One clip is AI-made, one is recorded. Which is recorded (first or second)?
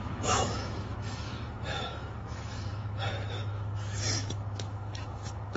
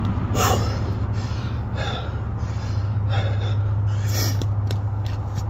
second